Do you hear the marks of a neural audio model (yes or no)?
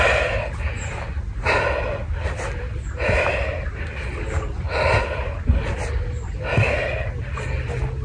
no